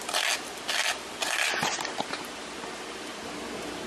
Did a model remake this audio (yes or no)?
no